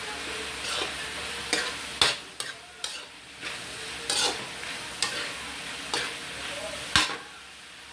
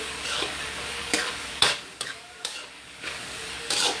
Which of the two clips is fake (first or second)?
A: second